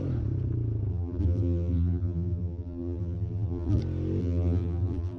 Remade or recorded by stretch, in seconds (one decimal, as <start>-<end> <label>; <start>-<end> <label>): 0.0-0.9 recorded; 0.9-3.8 remade; 3.8-4.2 recorded; 4.2-5.2 remade